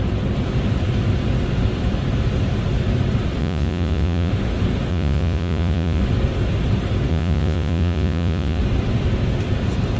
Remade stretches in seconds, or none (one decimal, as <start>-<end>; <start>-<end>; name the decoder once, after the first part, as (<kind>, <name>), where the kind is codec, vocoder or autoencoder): 3.4-4.3 (vocoder, Vocos); 4.9-6.0; 7.1-8.6